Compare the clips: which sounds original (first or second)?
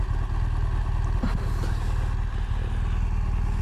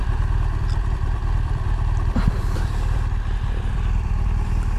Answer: first